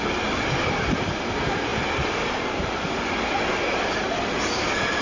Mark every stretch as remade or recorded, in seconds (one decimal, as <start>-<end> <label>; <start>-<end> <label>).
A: 0.0-5.0 recorded